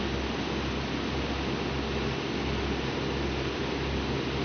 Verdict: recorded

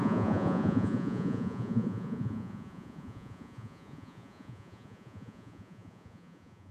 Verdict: remade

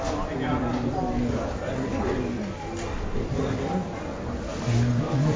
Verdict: recorded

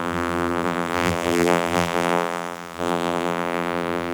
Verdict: remade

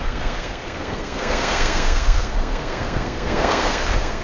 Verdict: remade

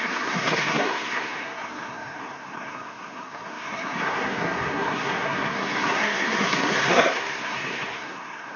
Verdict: remade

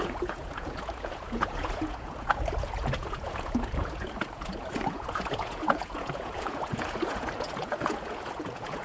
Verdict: remade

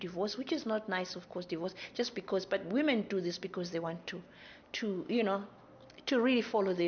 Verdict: recorded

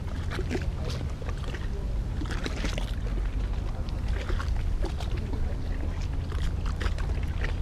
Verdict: recorded